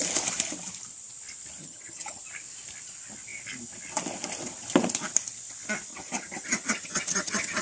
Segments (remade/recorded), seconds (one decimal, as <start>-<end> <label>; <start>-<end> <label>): 0.0-1.6 recorded; 1.6-2.2 remade; 2.2-5.9 recorded; 5.9-7.6 remade

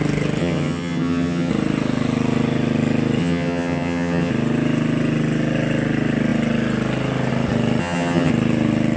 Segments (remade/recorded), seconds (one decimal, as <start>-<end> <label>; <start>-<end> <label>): 0.0-0.4 recorded; 0.4-1.5 remade; 1.5-3.2 recorded; 3.2-4.3 remade; 4.3-7.8 recorded; 7.8-8.3 remade; 8.3-9.0 recorded